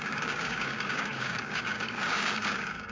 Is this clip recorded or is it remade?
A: remade